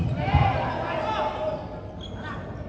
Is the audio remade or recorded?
recorded